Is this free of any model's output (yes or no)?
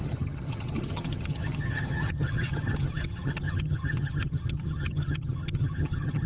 no